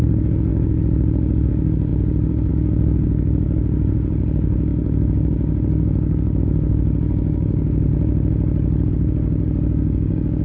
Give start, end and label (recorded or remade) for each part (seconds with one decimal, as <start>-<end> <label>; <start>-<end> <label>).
0.0-7.9 remade; 7.9-8.9 recorded; 8.9-10.4 remade